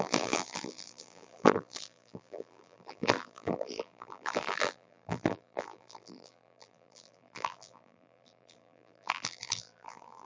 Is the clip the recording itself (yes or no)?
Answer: no